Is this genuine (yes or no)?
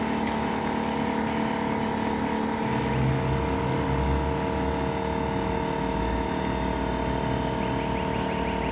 yes